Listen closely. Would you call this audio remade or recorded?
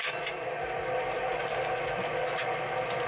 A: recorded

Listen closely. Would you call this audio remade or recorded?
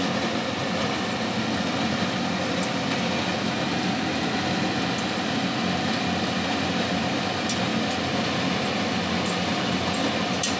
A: recorded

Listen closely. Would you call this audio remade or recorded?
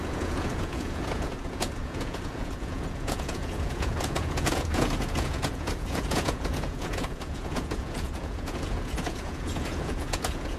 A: remade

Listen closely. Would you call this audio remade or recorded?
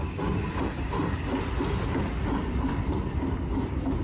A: recorded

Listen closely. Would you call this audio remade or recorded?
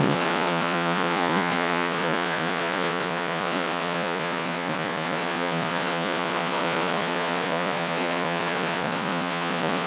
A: remade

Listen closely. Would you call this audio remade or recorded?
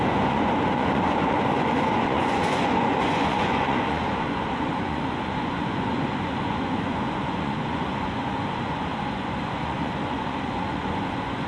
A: remade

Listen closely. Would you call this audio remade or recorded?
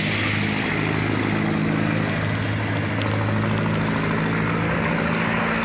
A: recorded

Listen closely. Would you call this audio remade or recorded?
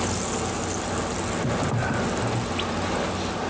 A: recorded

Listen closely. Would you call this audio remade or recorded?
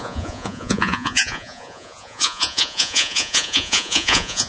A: remade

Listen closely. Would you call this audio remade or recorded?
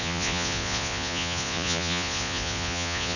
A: remade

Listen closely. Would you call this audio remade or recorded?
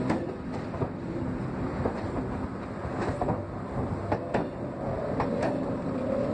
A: recorded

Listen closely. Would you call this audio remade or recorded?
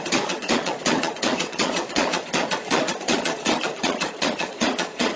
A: remade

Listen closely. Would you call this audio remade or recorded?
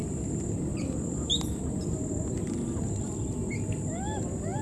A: recorded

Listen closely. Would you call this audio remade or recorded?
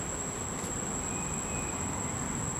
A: recorded